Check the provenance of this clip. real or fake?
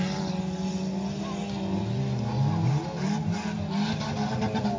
real